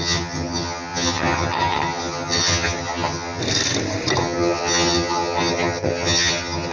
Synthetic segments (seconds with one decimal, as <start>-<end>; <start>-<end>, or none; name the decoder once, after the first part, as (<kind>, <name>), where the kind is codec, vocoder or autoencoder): 0.0-3.4 (vocoder, HiFi-GAN); 4.2-6.7